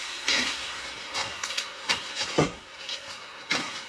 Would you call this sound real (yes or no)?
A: no